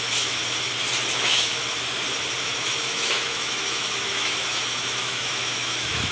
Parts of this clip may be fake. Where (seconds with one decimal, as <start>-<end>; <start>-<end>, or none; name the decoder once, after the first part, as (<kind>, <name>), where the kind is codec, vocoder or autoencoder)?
0.0-0.4 (autoencoder, DAC-VAE); 1.1-1.6; 2.4-6.1